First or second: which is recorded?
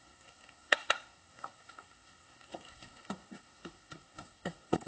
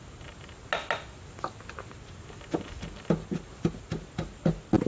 second